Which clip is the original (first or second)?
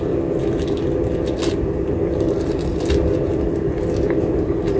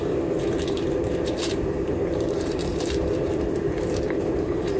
first